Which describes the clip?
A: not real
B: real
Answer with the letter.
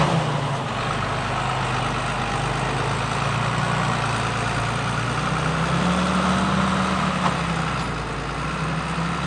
B